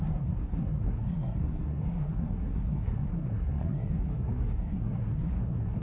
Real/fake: fake